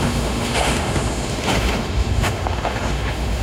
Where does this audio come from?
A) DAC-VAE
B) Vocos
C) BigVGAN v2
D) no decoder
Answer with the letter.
A